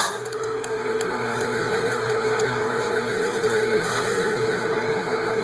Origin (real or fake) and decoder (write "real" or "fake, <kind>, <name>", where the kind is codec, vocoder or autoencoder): fake, codec, SNAC